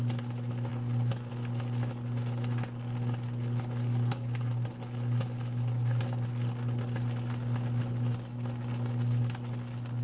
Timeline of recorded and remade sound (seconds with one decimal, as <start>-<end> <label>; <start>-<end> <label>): 0.0-10.0 recorded